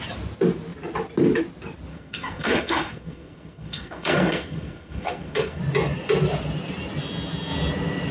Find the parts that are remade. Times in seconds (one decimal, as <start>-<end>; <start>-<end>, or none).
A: 1.9-5.6